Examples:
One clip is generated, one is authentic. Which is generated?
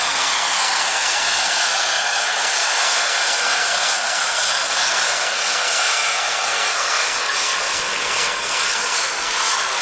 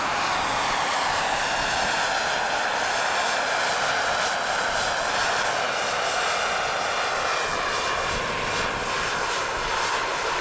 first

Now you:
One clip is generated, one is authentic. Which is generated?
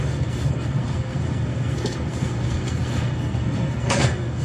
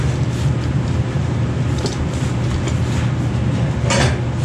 first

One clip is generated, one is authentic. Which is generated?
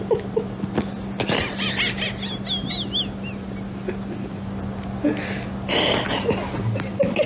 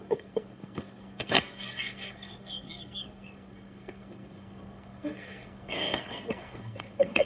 second